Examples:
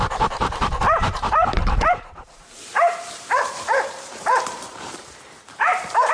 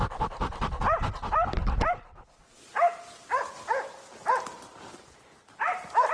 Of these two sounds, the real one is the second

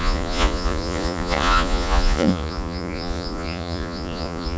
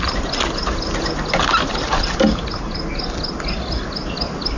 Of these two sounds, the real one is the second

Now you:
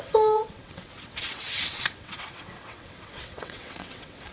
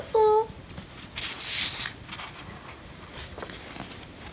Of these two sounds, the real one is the second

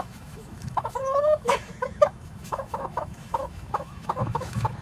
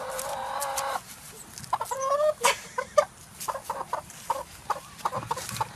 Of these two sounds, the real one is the second